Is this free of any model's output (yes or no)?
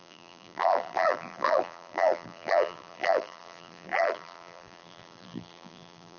no